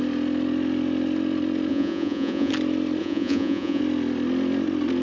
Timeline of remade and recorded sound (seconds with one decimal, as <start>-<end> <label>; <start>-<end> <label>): 0.0-1.7 recorded; 1.7-2.5 remade; 2.5-3.0 recorded; 3.0-3.8 remade; 3.8-5.0 recorded

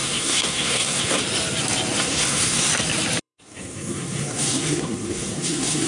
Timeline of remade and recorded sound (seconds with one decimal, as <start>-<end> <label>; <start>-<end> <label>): 0.0-1.2 remade; 1.2-2.0 recorded; 2.0-2.7 remade; 2.7-3.2 recorded; 3.2-5.9 remade

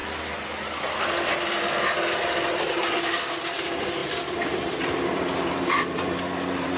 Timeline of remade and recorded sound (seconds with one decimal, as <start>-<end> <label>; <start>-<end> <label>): 0.0-1.6 recorded; 1.6-6.8 remade

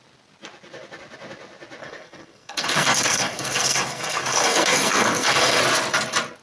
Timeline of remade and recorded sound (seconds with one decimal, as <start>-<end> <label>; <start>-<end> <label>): 0.0-1.8 recorded; 1.8-5.6 remade; 5.6-6.4 recorded

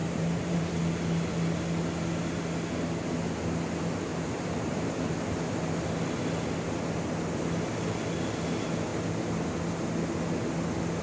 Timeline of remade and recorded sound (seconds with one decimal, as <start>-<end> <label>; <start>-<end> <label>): 0.0-0.6 remade; 0.6-4.1 recorded; 4.1-5.7 remade; 5.7-11.0 recorded